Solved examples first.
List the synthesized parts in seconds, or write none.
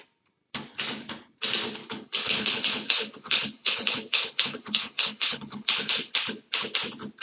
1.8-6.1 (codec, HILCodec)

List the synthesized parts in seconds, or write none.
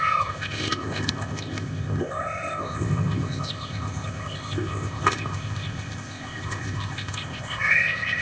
0.0-8.2 (codec, ZipCodec)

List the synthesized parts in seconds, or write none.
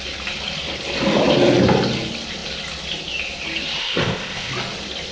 3.8-4.5 (codec, ZipCodec)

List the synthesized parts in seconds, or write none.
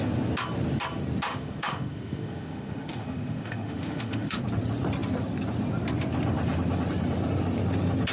1.3-4.4 (autoencoder, DAC-VAE)